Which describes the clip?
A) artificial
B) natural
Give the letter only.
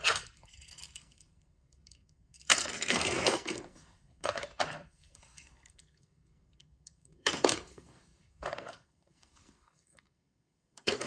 A